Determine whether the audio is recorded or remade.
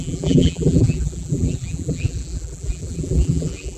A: remade